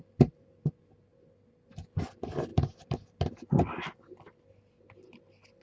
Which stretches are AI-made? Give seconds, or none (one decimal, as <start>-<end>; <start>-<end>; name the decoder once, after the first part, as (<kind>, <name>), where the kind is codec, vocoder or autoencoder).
none